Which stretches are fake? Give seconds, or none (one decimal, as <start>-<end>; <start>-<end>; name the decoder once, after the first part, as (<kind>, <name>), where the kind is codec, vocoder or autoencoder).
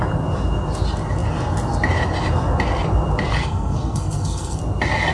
3.4-4.6 (codec, SNAC)